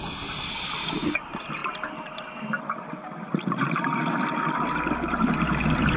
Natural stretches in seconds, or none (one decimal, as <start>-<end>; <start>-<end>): 0.0-6.0